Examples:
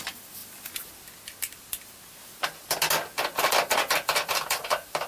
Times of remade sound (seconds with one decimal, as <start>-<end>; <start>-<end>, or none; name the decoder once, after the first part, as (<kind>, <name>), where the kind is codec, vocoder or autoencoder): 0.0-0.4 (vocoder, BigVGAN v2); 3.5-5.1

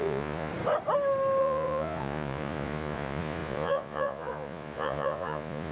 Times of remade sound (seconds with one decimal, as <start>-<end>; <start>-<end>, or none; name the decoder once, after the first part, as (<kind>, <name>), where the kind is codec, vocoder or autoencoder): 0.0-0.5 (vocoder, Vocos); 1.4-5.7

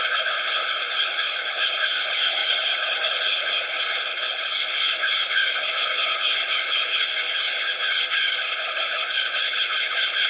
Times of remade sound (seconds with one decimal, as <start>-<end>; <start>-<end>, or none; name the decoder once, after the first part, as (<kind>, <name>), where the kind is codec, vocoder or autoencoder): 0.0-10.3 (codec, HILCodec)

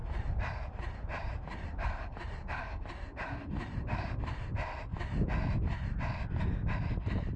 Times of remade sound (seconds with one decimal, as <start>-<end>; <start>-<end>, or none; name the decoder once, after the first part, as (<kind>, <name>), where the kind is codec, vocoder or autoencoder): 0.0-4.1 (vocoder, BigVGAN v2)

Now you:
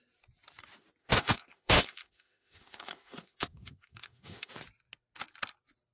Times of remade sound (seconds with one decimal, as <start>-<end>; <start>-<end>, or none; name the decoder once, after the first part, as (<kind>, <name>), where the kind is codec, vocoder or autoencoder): 1.0-4.5 (autoencoder, DAC-VAE)